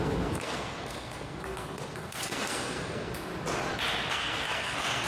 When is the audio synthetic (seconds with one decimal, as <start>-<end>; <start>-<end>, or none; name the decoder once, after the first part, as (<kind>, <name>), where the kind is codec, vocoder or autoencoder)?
0.0-3.3 (codec, SNAC); 4.1-5.1